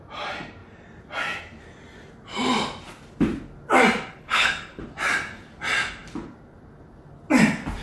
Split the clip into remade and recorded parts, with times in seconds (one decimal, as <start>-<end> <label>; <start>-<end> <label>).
0.0-4.1 recorded; 4.1-4.8 remade; 4.8-7.8 recorded